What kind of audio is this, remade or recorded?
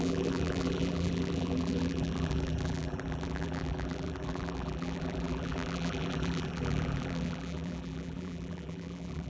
remade